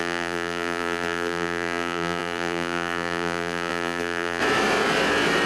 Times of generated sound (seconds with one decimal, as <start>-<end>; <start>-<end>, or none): 0.0-4.4